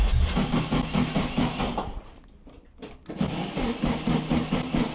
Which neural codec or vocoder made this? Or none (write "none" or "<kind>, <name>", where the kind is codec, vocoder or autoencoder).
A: none